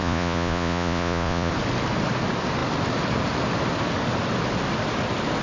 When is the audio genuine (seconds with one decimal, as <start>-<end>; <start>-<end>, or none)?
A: 1.5-5.4